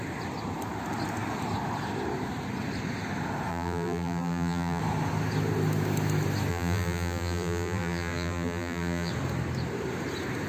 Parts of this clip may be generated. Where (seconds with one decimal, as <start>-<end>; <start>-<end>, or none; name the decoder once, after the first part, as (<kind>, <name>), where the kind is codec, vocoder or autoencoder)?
3.5-4.8 (vocoder, BigVGAN v2); 6.5-9.1